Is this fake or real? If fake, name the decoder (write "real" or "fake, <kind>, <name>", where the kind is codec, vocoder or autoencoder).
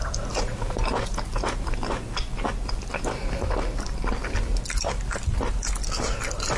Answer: real